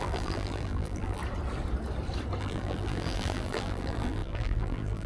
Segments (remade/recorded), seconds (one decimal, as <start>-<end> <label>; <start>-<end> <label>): 0.0-1.2 remade; 1.2-2.4 recorded; 2.4-5.1 remade